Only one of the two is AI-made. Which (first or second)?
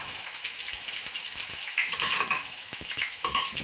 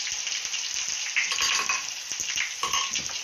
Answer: first